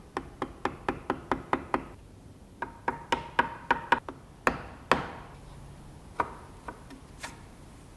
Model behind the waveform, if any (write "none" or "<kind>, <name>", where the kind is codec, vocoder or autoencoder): none